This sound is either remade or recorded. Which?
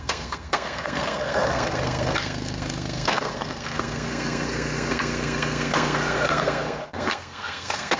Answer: remade